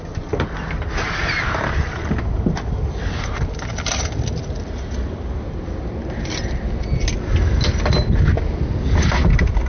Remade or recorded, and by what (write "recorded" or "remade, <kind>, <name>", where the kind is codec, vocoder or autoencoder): recorded